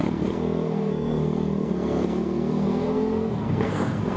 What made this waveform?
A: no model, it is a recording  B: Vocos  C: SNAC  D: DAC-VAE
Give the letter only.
C